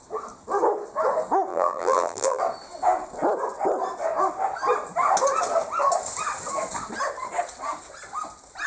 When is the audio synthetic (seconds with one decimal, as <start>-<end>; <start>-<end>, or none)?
1.5-2.4